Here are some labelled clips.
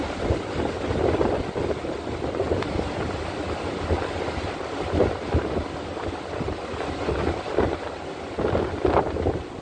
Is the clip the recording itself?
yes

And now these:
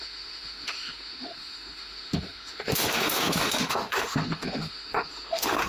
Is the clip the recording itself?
no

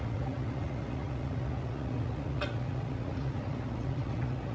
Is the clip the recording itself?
no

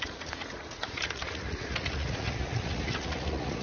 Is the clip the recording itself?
no